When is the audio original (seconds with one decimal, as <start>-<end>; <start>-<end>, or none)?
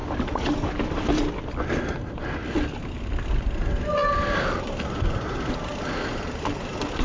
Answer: 0.0-7.0